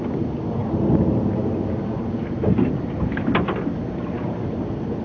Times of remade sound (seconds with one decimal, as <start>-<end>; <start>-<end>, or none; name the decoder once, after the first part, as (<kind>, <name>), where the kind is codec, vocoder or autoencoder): none